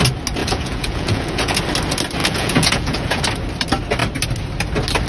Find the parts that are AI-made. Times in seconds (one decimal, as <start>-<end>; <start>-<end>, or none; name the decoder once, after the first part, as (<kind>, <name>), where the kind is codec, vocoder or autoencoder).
0.4-1.6 (vocoder, Vocos); 2.2-3.2